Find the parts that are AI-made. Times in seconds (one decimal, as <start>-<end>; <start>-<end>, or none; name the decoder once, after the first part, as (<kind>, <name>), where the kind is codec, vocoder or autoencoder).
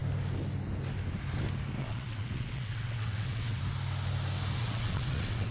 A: 1.8-3.6 (vocoder, WaveNeXt); 4.6-5.5